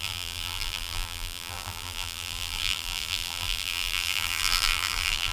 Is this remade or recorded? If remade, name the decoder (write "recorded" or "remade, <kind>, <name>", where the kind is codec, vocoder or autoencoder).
remade, vocoder, BigVGAN v2